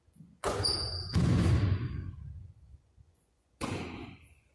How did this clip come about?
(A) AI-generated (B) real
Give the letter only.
A